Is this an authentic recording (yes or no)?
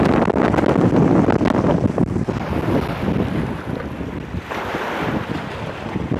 yes